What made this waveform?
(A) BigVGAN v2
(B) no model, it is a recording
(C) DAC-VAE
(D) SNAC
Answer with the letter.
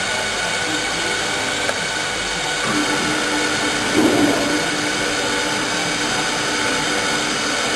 B